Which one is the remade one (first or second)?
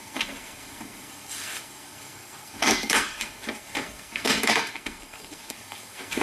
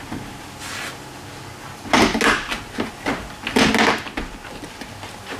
first